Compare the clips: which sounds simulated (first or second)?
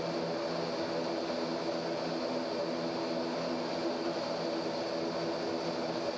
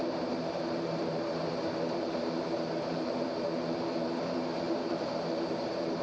second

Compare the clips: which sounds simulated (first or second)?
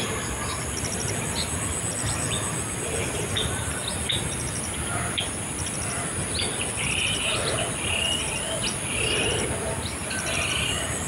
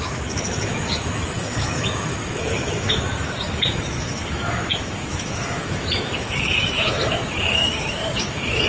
second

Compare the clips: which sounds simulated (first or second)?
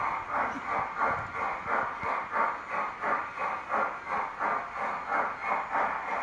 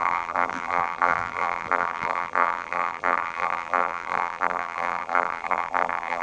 second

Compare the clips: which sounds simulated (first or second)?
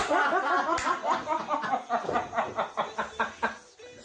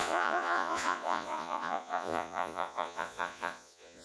second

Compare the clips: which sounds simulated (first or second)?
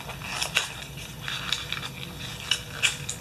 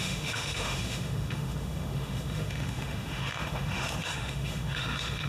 second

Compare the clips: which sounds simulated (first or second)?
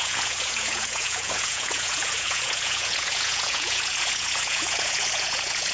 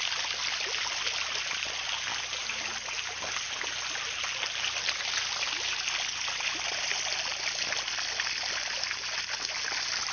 first